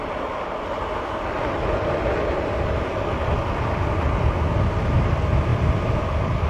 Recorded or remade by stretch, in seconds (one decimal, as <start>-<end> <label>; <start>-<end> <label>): 0.0-6.5 recorded